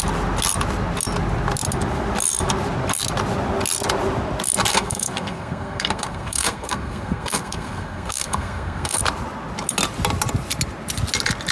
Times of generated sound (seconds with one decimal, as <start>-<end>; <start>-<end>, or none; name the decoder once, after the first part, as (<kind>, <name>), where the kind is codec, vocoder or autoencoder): 4.7-9.0 (codec, SNAC)